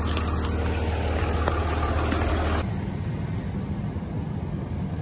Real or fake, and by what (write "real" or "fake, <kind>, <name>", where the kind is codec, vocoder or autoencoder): real